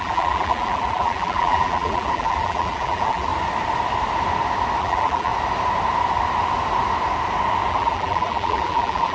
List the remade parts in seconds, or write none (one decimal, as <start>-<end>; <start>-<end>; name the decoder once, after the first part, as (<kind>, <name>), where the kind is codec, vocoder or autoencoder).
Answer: 0.0-3.3 (vocoder, BigVGAN v2); 4.8-5.3; 7.7-9.1